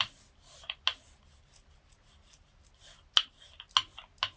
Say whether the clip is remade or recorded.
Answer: recorded